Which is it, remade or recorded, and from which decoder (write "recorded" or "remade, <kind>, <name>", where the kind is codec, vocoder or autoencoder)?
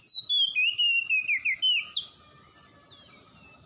recorded